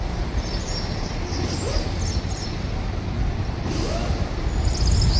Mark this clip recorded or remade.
recorded